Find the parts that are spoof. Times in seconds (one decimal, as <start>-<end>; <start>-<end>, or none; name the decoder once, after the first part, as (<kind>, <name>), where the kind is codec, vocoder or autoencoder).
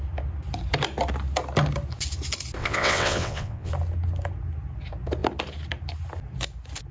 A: 2.6-3.7 (vocoder, WaveNeXt)